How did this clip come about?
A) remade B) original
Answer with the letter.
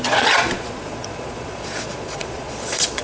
A